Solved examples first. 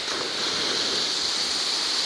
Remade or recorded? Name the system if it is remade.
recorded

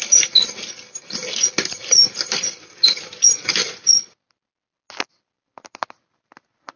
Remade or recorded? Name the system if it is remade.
recorded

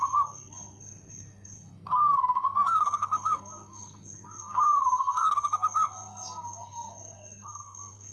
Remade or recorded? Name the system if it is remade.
remade, codec, SNAC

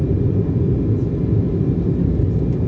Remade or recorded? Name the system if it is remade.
recorded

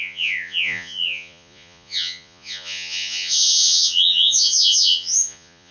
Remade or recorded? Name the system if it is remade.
remade, vocoder, Vocos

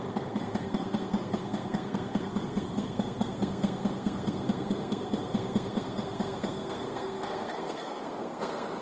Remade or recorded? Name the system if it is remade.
remade, codec, SNAC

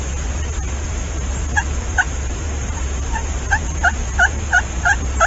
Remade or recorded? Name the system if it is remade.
remade, vocoder, BigVGAN v2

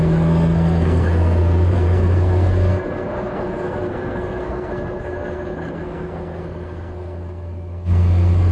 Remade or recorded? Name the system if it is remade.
remade, codec, SNAC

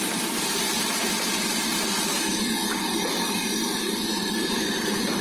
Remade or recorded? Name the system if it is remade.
remade, vocoder, BigVGAN v2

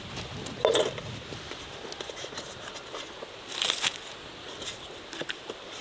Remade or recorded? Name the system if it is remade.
recorded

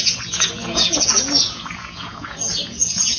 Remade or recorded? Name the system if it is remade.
remade, vocoder, Vocos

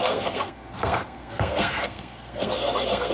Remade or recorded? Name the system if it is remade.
remade, codec, SNAC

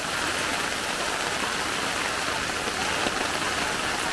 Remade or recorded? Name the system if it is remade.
recorded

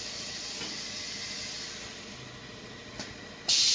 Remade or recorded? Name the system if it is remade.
recorded